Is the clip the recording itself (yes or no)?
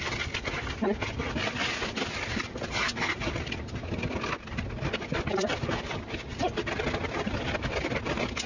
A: yes